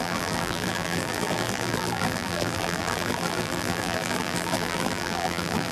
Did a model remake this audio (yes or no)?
yes